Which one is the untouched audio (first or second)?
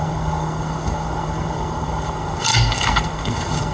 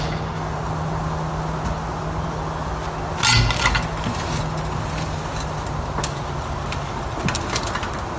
second